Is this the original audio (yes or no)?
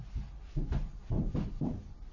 yes